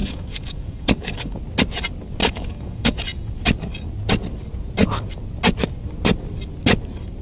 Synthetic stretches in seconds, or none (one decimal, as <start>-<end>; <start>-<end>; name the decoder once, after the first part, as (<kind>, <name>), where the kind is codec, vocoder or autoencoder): 0.0-1.4 (codec, DAC); 2.2-3.0